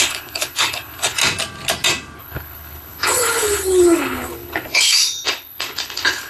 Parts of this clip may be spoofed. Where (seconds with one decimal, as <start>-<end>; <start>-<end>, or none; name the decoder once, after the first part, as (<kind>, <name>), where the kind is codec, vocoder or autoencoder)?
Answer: 0.0-1.2 (codec, HILCodec); 2.2-6.3

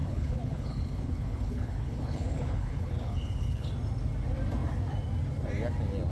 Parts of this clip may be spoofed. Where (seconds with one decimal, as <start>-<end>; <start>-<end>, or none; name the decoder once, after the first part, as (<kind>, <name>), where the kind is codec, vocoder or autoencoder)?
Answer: 0.0-3.7 (codec, HILCodec)